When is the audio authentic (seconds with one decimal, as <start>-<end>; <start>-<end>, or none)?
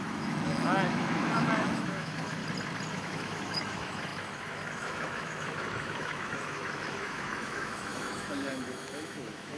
2.4-2.9